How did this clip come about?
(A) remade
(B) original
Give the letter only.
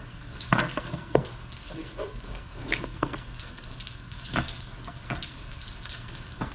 A